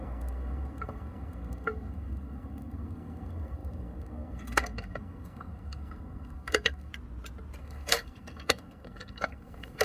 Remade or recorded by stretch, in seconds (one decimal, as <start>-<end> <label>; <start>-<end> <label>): 0.0-6.9 remade; 6.9-7.6 recorded; 7.6-9.8 remade